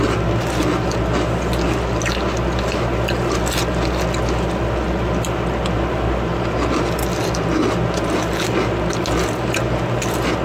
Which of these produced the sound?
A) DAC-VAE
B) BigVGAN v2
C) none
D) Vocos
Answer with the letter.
C